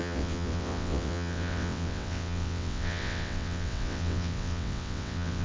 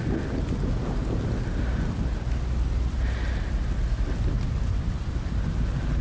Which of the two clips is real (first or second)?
second